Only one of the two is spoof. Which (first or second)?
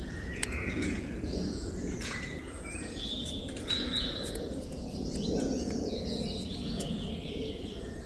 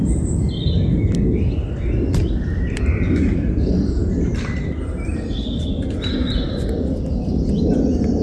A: first